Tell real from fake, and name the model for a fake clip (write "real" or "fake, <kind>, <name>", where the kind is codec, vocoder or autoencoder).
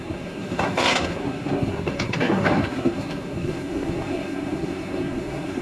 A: fake, codec, SNAC